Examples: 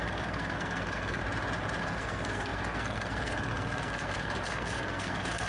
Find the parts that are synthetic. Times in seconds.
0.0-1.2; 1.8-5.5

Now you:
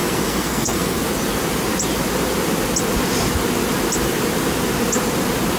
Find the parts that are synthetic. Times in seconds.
0.0-1.0

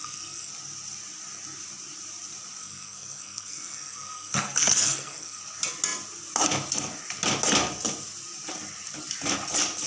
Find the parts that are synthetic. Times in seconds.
0.0-0.5; 2.6-5.4

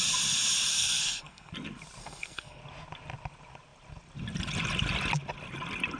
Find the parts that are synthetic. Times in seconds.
0.7-1.5; 2.0-2.6

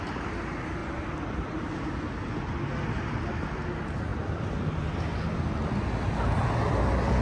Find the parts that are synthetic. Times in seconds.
none

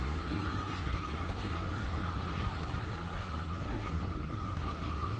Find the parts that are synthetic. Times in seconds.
0.0-5.2

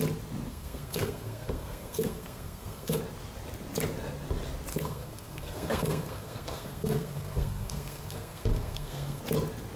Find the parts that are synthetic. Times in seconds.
0.5-3.0; 4.7-9.2

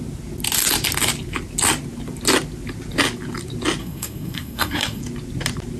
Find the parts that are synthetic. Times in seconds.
3.8-5.0